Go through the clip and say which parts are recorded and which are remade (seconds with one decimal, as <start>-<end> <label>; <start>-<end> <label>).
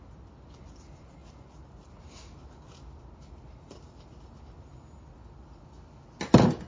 0.0-6.7 recorded